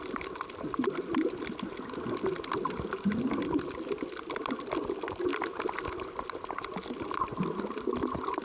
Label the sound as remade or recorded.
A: recorded